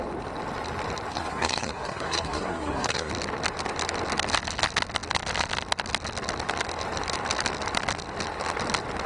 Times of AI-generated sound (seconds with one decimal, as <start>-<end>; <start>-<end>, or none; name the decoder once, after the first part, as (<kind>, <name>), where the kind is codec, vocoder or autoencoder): 1.1-3.1 (codec, SNAC)